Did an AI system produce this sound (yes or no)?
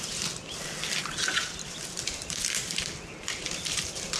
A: no